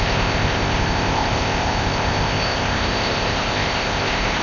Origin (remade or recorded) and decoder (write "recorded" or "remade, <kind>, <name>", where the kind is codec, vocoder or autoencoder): remade, codec, ZipCodec